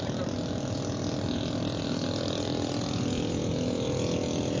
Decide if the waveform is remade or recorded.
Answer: recorded